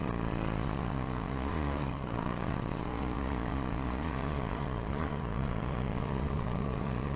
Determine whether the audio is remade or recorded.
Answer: remade